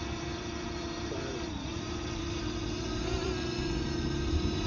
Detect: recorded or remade remade